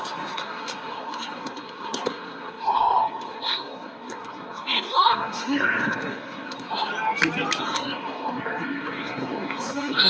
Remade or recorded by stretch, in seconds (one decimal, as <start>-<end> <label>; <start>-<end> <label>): 0.0-6.9 remade; 6.9-7.6 recorded; 7.6-10.1 remade